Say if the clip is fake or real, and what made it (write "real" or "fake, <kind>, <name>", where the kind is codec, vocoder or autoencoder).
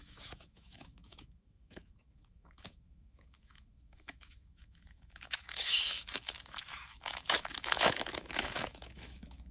fake, autoencoder, DAC-VAE